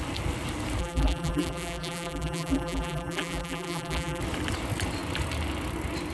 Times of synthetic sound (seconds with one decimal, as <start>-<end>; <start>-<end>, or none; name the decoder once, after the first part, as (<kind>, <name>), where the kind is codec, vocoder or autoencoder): 0.8-4.2 (vocoder, BigVGAN v2)

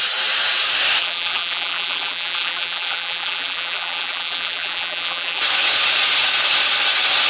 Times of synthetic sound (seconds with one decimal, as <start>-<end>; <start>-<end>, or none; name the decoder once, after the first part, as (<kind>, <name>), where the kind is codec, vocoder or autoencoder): 1.0-5.4 (vocoder, BigVGAN v2)

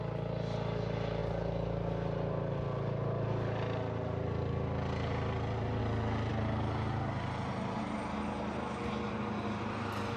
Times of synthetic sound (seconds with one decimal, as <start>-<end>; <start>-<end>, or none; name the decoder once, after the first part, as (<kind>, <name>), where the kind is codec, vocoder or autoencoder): none

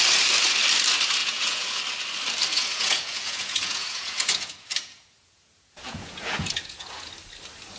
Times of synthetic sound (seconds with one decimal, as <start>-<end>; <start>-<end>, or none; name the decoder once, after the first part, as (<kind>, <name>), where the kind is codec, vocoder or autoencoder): 1.2-1.8 (vocoder, Vocos); 2.5-7.1